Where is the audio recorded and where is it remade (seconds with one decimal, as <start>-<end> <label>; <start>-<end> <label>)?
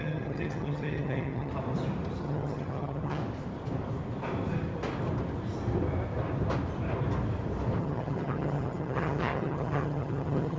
0.0-1.5 remade; 1.5-2.2 recorded; 2.2-3.2 remade; 3.2-7.8 recorded; 7.8-10.6 remade